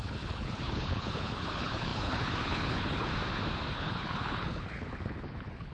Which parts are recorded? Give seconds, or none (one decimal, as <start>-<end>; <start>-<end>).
3.1-3.7